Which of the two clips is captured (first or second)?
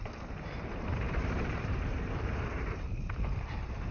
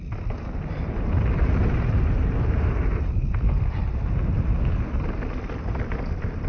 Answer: second